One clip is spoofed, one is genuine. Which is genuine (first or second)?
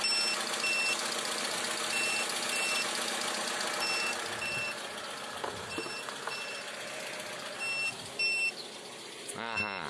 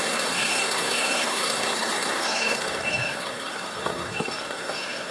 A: first